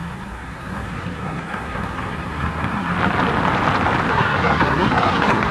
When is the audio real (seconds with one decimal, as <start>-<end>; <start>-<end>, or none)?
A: 2.9-4.1